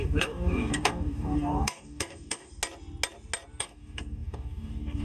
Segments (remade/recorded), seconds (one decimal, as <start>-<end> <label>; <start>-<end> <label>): 0.0-2.5 remade; 2.5-3.6 recorded; 3.6-5.0 remade